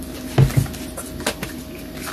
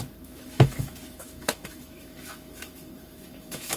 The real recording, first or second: first